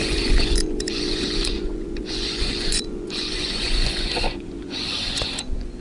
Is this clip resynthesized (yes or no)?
yes